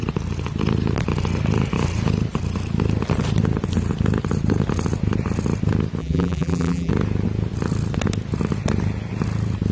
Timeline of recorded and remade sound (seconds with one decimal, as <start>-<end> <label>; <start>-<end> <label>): 0.0-6.0 recorded; 6.0-6.9 remade; 6.9-9.7 recorded